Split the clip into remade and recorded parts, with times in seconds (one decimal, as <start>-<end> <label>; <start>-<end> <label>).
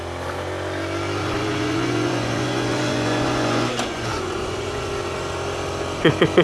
0.0-1.2 recorded; 1.2-5.0 remade; 5.0-6.4 recorded